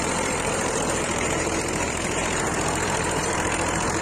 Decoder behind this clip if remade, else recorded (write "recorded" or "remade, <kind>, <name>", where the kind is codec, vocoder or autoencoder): remade, vocoder, BigVGAN v2